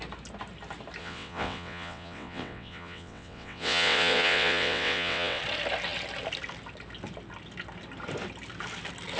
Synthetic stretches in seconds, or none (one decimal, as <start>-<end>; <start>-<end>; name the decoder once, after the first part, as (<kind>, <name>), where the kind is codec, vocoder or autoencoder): 1.0-5.4 (vocoder, WaveNeXt)